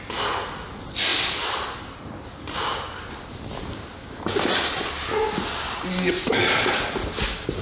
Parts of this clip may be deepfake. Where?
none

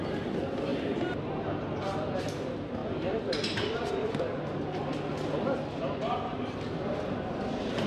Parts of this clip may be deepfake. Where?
none

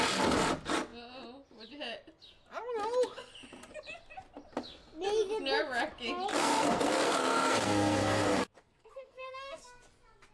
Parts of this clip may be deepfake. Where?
6.3-9.6 (codec, SNAC)